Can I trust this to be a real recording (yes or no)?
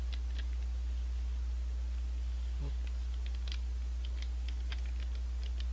yes